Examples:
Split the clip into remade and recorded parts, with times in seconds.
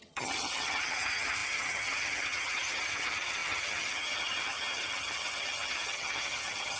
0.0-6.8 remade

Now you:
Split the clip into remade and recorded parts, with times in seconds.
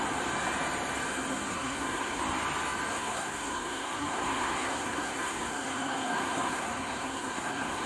0.0-1.5 recorded; 1.5-2.2 remade; 2.2-2.9 recorded; 2.9-7.9 remade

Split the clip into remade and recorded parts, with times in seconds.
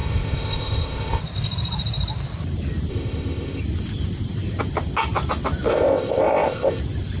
0.0-1.2 remade; 1.2-2.9 recorded; 2.9-3.6 remade; 3.6-5.7 recorded; 5.7-6.8 remade; 6.8-7.2 recorded